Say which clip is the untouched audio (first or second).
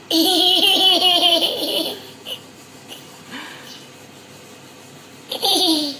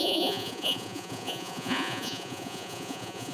first